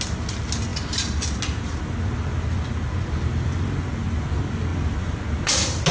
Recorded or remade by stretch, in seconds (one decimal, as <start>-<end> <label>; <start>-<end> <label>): 0.0-5.9 recorded

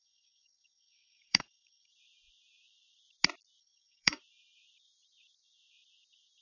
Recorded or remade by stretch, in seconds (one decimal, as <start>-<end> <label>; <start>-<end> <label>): 0.0-1.9 remade; 1.9-3.6 recorded; 3.6-4.2 remade; 4.2-6.4 recorded

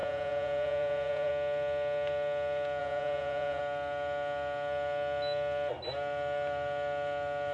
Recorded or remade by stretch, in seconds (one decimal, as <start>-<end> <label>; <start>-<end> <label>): 0.0-1.3 remade; 1.3-2.8 recorded; 2.8-3.6 remade; 3.6-7.5 recorded

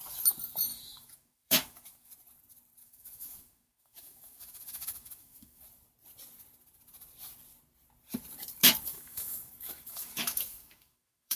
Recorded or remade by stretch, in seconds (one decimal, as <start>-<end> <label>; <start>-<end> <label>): 0.0-0.7 recorded; 0.7-2.1 remade; 2.1-2.8 recorded; 2.8-5.6 remade; 5.6-8.9 recorded; 8.9-11.4 remade

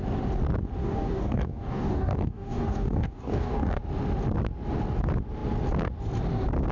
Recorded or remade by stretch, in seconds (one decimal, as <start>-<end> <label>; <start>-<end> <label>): 0.0-0.8 recorded; 0.8-3.8 remade; 3.8-6.7 recorded

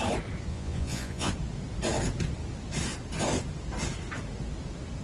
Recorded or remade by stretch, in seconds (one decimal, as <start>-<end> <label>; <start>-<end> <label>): 0.0-0.5 recorded; 0.5-1.3 remade; 1.3-5.0 recorded

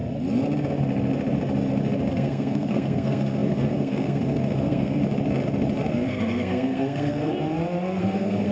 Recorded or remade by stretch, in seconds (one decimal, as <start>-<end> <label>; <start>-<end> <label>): 0.0-2.1 recorded; 2.1-5.0 remade; 5.0-5.9 recorded; 5.9-7.3 remade; 7.3-8.0 recorded; 8.0-8.5 remade